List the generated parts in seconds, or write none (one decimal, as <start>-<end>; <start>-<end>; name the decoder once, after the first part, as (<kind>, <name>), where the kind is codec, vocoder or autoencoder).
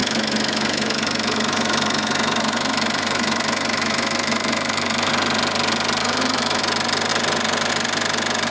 0.0-5.1 (autoencoder, DAC-VAE); 6.0-6.6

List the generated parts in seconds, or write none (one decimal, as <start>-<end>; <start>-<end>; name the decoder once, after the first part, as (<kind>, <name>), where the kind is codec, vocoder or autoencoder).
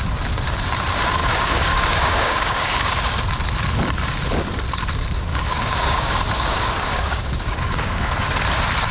1.2-2.9 (codec, DAC); 5.3-8.1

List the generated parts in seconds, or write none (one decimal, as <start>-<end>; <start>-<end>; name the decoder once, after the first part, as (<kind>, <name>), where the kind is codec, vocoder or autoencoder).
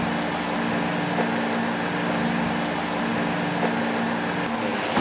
none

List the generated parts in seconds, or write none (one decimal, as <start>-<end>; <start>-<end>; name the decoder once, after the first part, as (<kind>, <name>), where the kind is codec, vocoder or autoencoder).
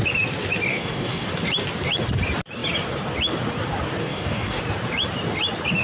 0.7-1.3 (codec, DAC); 4.0-4.6